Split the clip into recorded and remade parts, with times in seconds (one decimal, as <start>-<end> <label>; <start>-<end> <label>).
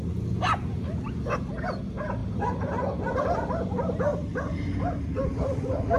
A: 0.0-2.2 recorded; 2.2-3.5 remade; 3.5-6.0 recorded